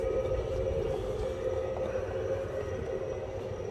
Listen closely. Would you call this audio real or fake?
real